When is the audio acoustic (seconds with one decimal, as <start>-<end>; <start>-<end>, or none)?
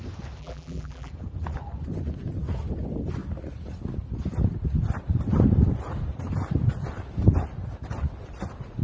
0.0-0.4; 1.1-8.8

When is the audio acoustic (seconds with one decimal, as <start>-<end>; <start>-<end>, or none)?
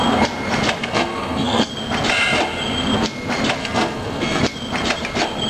0.0-0.8; 1.7-3.6; 4.4-5.5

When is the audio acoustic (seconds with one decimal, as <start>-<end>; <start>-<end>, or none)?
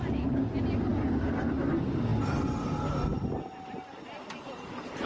0.0-5.1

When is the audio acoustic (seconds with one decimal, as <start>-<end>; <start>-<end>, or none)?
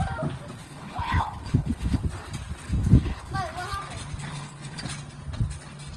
0.0-0.6; 2.0-2.8; 3.3-4.3; 4.8-6.0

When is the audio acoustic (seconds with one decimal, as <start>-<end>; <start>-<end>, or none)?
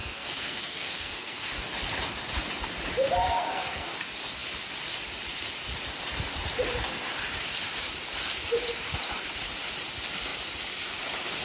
1.5-3.2; 3.9-11.4